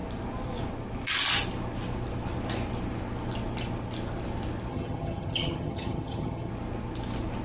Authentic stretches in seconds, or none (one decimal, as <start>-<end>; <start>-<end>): 0.0-4.7; 6.5-7.4